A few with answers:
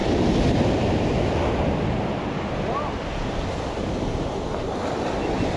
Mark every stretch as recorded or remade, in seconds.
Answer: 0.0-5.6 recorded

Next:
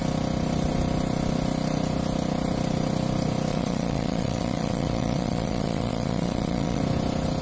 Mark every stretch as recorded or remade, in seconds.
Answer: 0.0-3.5 recorded; 3.5-6.8 remade; 6.8-7.4 recorded